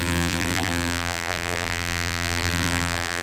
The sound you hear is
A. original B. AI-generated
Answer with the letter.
B